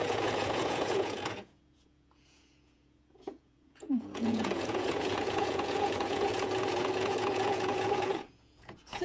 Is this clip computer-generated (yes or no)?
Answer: yes